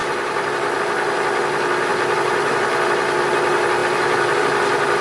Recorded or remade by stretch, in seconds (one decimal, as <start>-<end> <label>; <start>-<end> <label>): 0.0-0.8 remade; 0.8-1.9 recorded; 1.9-2.5 remade; 2.5-5.0 recorded